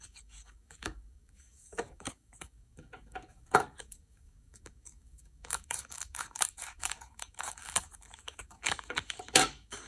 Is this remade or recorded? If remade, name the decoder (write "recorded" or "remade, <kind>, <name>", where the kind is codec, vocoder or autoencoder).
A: remade, codec, DAC